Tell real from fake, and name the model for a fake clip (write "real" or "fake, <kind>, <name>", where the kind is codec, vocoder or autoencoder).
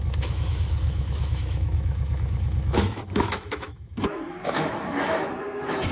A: fake, autoencoder, DAC-VAE